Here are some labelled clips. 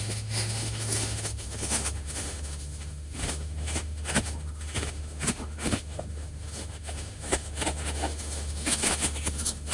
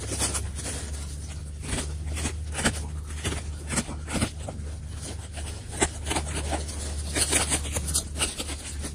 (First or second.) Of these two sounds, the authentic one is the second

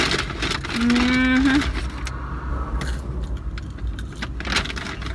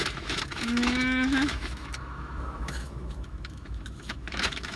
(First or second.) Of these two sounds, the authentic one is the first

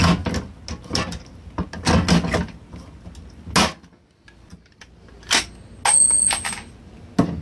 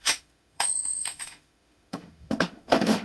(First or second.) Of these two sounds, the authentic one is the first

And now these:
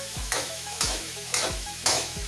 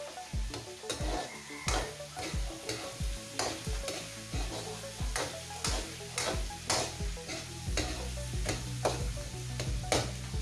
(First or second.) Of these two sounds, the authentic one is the second